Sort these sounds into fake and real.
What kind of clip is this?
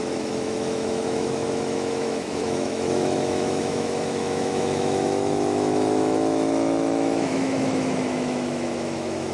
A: fake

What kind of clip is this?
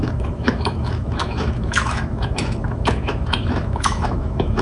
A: fake